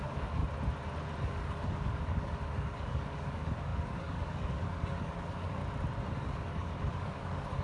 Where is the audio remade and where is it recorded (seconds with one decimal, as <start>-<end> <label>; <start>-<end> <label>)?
0.0-0.4 remade; 0.4-1.2 recorded; 1.2-5.6 remade; 5.6-6.1 recorded; 6.1-7.6 remade